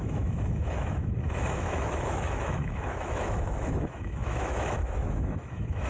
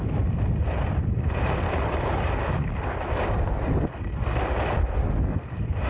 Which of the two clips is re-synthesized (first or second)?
first